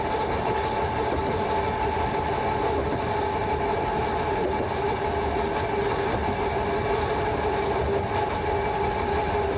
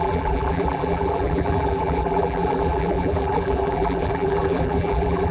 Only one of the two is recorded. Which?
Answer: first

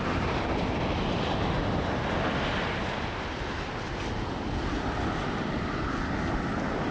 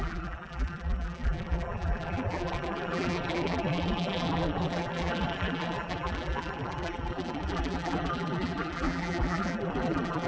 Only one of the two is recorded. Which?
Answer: first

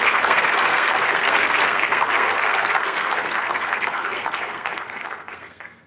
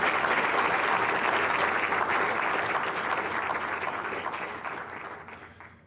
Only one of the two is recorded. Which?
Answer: second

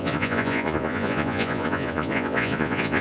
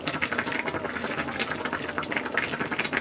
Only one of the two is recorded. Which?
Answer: second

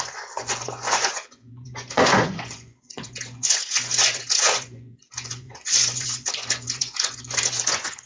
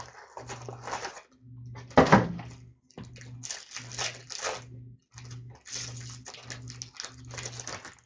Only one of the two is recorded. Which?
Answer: second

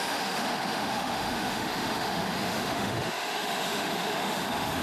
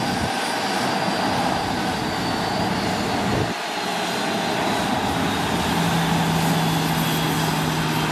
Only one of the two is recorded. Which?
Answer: second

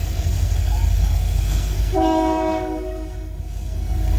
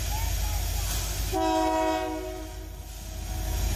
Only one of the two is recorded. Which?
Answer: second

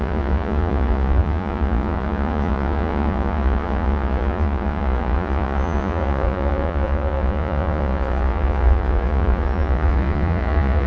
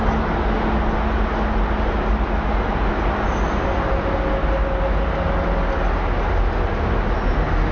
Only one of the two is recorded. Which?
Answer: second